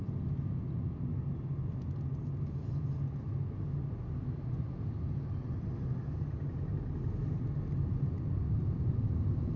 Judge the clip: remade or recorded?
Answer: recorded